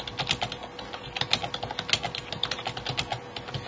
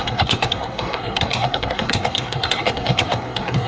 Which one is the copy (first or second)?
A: second